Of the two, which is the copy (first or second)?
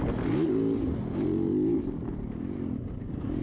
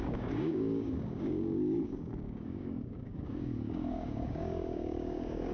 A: second